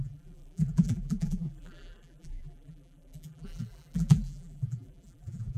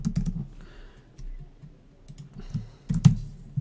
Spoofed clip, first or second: first